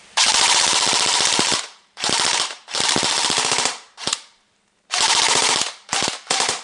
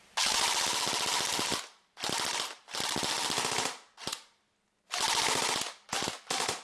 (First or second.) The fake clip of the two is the first